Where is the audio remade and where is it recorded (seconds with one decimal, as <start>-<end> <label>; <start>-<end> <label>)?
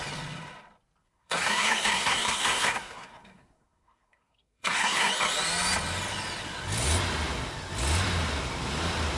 0.0-1.0 recorded; 1.0-5.1 remade; 5.1-9.2 recorded